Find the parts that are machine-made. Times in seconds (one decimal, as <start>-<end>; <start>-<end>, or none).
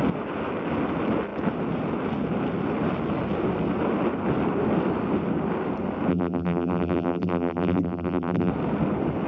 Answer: 6.1-8.5